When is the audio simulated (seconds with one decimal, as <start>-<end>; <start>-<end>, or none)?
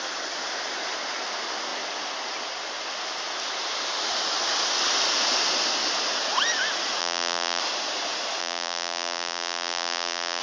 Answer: 7.0-7.6; 8.4-10.4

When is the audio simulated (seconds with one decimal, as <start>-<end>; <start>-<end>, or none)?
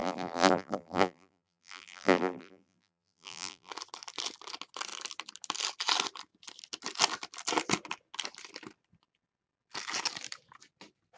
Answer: 0.0-3.7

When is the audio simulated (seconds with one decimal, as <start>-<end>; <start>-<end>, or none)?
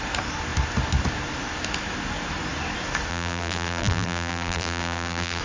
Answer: 3.1-5.4